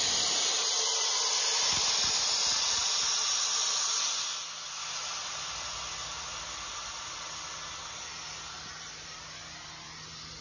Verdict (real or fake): real